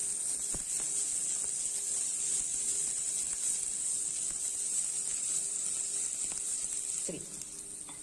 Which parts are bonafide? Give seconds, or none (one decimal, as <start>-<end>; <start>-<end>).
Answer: 0.0-8.0